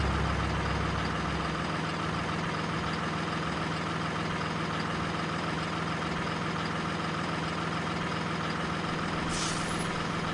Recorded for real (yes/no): yes